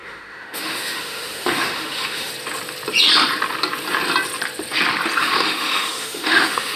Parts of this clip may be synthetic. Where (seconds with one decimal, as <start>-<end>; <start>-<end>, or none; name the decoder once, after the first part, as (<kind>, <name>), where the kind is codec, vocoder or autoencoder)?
0.0-2.3 (autoencoder, DAC-VAE); 5.2-6.8